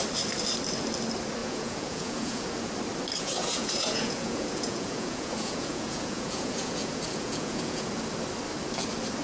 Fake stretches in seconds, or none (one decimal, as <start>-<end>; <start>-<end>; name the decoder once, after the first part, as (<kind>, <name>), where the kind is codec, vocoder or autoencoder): 1.4-2.7 (vocoder, Vocos); 3.2-7.9